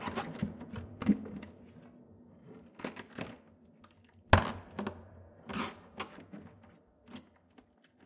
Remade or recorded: recorded